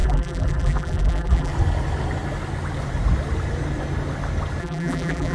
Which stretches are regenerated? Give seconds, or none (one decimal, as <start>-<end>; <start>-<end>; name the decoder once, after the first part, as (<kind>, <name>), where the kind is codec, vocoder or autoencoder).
0.0-1.5 (vocoder, BigVGAN v2); 4.6-5.3